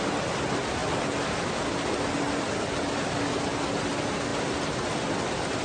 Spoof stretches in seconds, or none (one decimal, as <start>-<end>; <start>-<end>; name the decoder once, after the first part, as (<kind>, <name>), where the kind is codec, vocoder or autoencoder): none